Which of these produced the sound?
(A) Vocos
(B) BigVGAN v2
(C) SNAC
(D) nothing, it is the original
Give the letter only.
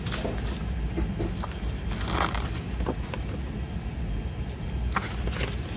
D